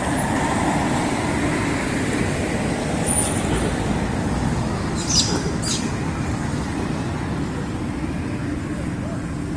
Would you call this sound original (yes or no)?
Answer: yes